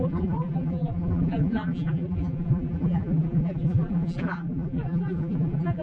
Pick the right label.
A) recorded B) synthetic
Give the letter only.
B